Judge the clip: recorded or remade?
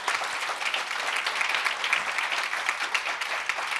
recorded